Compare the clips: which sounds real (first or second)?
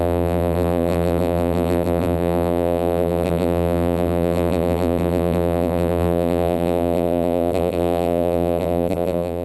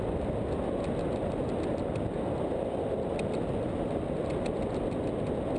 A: second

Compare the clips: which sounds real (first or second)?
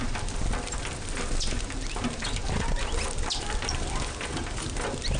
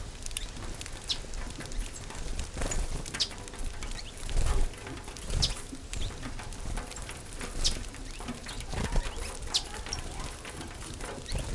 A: first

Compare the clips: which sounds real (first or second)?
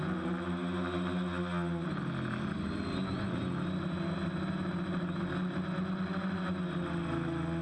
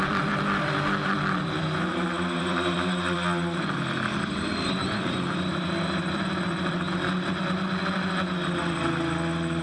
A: first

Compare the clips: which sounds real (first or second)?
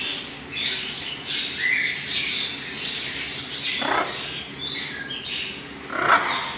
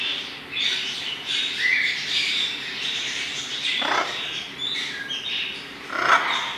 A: first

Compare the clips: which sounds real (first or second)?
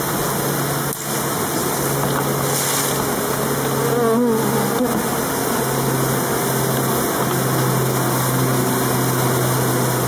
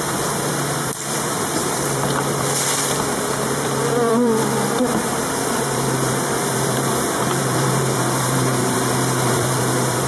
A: first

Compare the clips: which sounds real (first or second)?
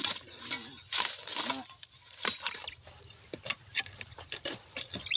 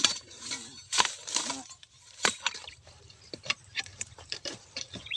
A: first